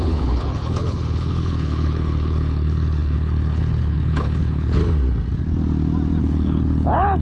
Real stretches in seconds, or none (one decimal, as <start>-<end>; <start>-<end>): 4.8-6.2